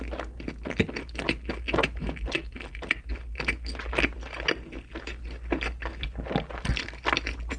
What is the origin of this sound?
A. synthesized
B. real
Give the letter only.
B